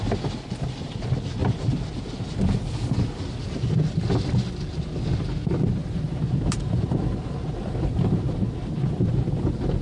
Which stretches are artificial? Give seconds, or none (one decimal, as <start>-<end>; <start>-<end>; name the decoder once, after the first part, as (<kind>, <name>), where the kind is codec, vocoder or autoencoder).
1.4-2.6 (vocoder, BigVGAN v2); 5.8-9.4